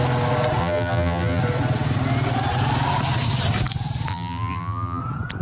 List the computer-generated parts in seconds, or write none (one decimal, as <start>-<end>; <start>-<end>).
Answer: 0.6-1.4; 4.1-5.0